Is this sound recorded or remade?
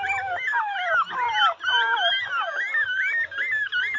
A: recorded